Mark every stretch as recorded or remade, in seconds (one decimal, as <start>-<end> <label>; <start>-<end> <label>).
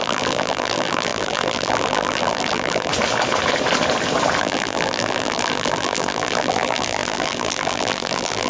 0.0-2.9 remade; 2.9-4.4 recorded; 4.4-8.5 remade